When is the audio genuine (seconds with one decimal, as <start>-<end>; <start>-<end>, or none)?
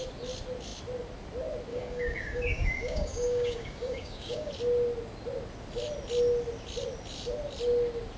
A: 0.0-1.7; 4.5-8.2